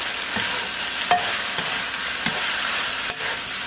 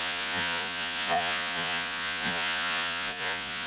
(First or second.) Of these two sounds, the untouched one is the first